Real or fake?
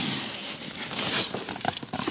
fake